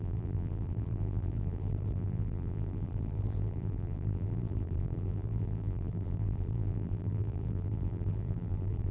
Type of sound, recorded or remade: remade